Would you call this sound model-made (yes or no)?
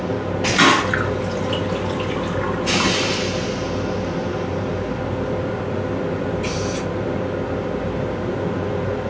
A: no